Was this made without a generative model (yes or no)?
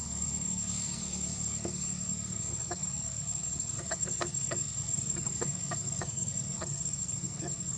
no